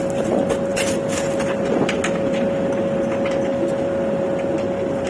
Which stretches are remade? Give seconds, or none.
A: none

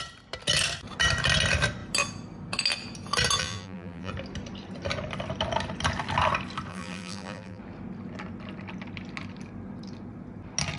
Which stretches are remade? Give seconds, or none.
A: 3.4-4.1 (vocoder, BigVGAN v2); 6.7-7.6

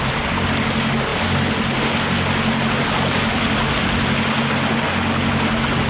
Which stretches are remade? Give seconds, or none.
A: none

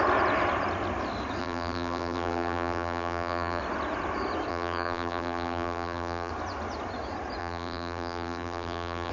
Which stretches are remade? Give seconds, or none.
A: 1.4-3.6 (vocoder, BigVGAN v2); 4.5-6.3; 7.4-9.1

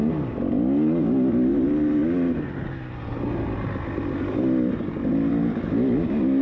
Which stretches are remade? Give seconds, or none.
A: none

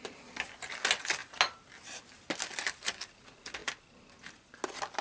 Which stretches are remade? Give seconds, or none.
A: none

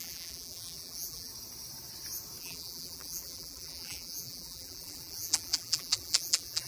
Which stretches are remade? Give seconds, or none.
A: 0.0-1.3 (vocoder, BigVGAN v2); 2.4-6.7